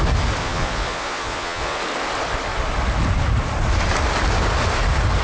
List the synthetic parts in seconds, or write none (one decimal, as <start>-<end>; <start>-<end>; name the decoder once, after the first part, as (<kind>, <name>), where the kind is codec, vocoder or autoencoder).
0.4-1.8 (vocoder, Vocos)